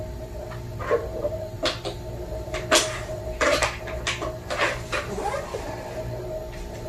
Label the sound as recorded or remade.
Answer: recorded